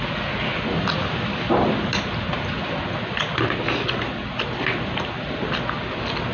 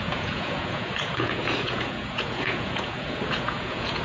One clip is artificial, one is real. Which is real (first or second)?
first